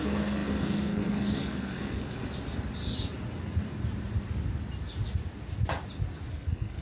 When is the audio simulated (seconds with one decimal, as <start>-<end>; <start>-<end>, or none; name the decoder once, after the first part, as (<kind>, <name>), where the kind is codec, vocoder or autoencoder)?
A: 0.0-2.2 (codec, SNAC); 6.3-6.8